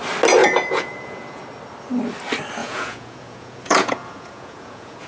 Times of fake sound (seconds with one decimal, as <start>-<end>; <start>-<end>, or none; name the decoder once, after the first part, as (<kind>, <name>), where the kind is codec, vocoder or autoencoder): 0.4-1.4 (vocoder, Vocos); 2.6-5.1